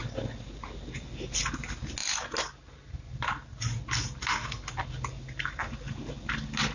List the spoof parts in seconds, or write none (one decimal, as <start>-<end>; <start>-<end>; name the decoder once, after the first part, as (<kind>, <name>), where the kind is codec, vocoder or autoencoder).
none